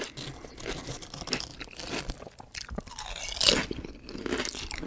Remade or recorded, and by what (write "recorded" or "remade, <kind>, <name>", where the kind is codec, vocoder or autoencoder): recorded